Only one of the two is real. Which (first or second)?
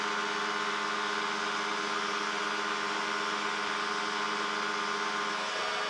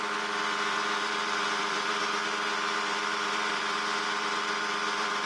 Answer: first